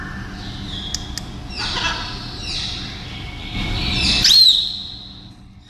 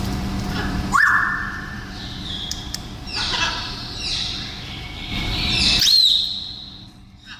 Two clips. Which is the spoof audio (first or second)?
second